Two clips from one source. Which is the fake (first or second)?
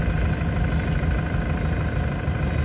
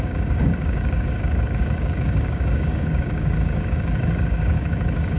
second